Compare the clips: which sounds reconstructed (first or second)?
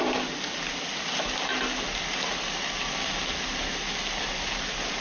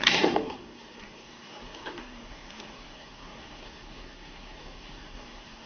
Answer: second